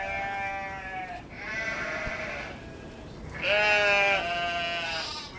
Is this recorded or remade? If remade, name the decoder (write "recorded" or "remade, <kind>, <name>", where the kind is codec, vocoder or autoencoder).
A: recorded